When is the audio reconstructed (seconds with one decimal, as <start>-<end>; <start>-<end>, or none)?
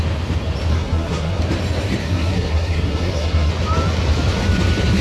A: 0.7-1.4; 2.0-3.5